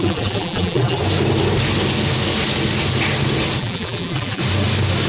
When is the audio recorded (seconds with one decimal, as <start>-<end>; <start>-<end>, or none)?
1.0-3.6; 4.4-5.1